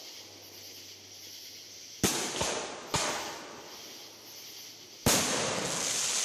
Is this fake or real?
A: real